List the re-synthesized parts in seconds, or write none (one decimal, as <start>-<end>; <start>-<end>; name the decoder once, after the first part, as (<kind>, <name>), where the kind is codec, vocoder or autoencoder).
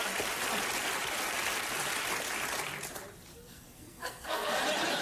3.3-4.6 (codec, SNAC)